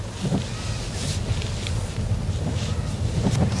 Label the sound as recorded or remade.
recorded